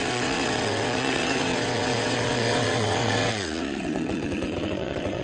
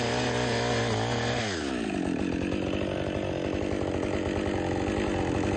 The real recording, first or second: second